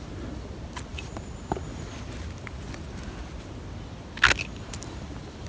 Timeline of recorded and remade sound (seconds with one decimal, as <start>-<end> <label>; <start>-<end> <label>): 0.0-5.5 recorded